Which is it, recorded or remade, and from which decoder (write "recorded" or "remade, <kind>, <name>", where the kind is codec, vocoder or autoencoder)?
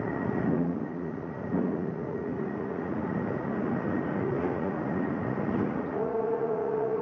remade, vocoder, Vocos